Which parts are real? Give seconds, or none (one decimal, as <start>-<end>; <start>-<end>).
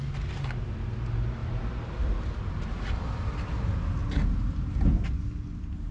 0.0-5.9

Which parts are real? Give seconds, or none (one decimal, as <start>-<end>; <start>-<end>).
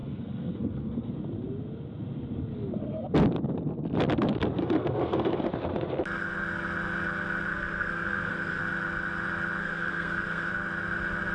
1.1-4.6; 5.4-7.5; 8.6-9.6; 10.5-11.3